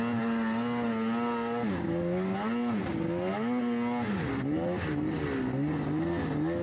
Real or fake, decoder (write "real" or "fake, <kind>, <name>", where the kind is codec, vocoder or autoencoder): real